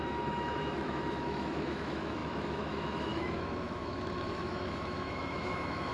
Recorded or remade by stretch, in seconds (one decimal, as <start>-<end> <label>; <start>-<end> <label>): 0.0-5.9 remade